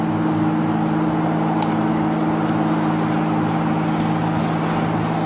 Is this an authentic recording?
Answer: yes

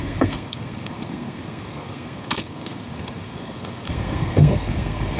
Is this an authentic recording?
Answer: no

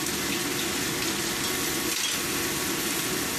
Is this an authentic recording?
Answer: yes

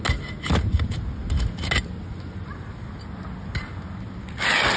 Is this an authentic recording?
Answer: yes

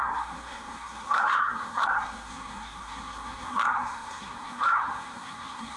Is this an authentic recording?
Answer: no